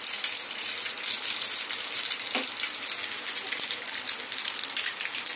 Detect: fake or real real